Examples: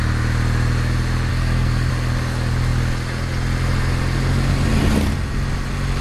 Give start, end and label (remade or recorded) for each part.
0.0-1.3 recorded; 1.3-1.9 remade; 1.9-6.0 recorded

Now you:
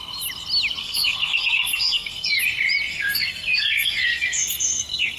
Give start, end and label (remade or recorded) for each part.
0.0-0.8 recorded; 0.8-2.4 remade; 2.4-2.9 recorded; 2.9-5.2 remade